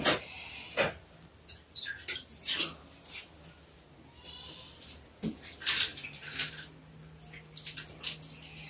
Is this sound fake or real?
real